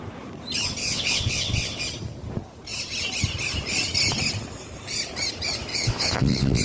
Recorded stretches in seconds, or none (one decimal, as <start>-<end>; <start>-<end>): 0.0-0.8; 1.8-5.7